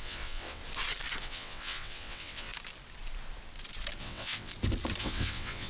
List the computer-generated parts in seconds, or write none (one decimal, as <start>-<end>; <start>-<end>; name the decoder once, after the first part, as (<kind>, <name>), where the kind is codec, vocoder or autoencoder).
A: 0.0-0.6 (vocoder, WaveNeXt); 1.2-2.5; 4.0-4.5; 5.0-5.7